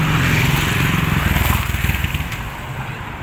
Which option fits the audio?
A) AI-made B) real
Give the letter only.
B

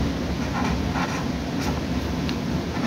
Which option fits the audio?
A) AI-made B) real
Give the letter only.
B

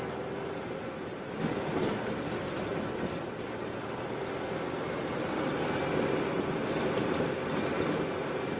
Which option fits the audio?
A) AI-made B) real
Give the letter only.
B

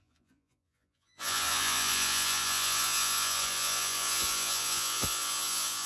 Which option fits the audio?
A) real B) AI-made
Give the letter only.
B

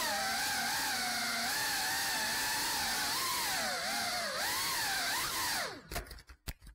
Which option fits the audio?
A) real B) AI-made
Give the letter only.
A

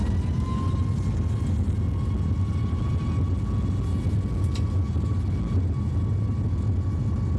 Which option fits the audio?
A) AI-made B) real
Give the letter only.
B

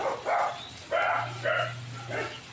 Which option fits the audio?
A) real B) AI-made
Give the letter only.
A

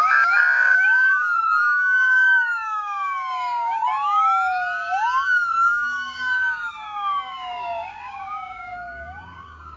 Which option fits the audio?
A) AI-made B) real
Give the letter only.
A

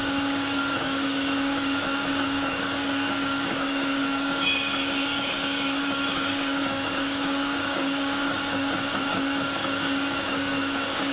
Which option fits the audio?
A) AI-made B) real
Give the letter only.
A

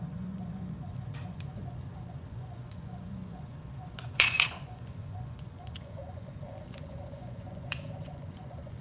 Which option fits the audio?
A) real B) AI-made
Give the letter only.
B